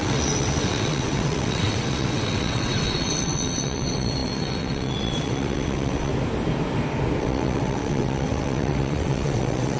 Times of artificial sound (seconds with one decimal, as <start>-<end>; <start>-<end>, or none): 0.0-6.1; 7.2-9.8